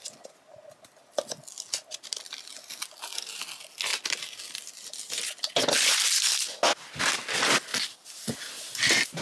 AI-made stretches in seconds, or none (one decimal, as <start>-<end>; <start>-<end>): none